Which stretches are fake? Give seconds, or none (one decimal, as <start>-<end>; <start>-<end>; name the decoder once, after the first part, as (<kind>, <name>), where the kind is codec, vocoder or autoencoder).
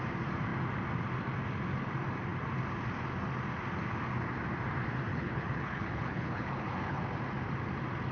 5.1-7.0 (codec, HILCodec)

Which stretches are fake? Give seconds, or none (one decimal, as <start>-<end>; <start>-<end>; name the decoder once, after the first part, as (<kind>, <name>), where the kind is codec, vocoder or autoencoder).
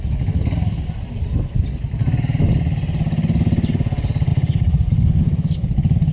4.3-4.9 (vocoder, Vocos)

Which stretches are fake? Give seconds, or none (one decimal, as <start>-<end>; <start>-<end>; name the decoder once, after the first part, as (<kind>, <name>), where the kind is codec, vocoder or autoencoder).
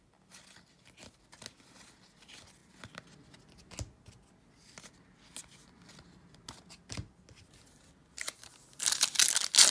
none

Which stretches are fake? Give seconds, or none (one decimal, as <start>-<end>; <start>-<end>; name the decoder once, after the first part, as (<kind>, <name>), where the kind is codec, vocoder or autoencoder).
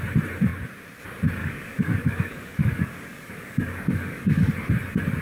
1.4-4.5 (codec, DAC)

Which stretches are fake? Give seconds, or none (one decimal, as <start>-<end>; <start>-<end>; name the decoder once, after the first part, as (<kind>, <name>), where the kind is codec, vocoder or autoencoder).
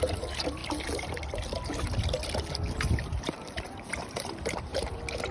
0.0-0.6 (vocoder, BigVGAN v2); 3.2-5.3